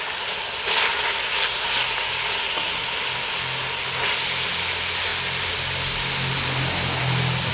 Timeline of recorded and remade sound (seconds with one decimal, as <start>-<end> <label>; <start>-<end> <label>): 0.0-7.5 recorded